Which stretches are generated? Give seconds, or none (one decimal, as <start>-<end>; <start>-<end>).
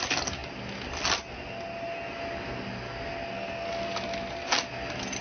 none